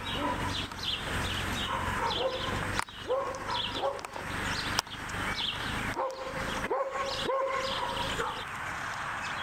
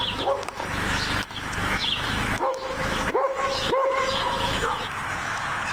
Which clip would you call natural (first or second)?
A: first